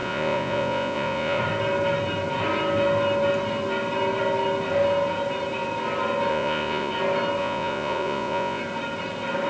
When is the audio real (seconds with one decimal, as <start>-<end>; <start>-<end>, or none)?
1.4-6.3; 6.9-7.4; 8.6-9.5